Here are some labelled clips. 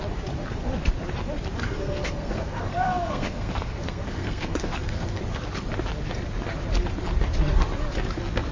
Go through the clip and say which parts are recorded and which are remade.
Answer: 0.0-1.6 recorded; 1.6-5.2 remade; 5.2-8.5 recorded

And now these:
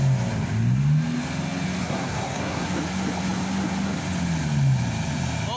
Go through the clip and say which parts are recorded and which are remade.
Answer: 0.0-1.8 recorded; 1.8-2.7 remade; 2.7-5.6 recorded

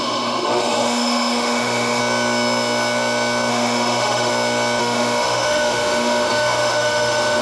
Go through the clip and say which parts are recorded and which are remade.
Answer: 0.0-2.0 remade; 2.0-3.5 recorded; 3.5-4.3 remade; 4.3-4.8 recorded; 4.8-7.4 remade

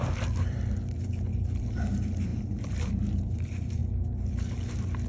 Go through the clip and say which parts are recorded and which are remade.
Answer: 0.0-3.8 remade; 3.8-5.1 recorded

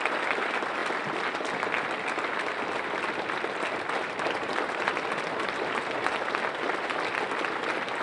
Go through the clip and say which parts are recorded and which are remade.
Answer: 0.0-8.0 recorded

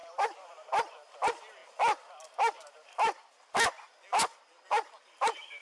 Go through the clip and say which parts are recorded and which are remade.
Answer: 0.0-1.1 remade; 1.1-5.6 recorded